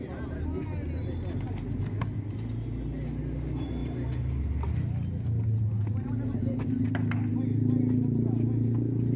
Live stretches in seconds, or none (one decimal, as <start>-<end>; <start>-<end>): 0.0-9.2